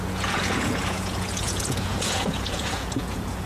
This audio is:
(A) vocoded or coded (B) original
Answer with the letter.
A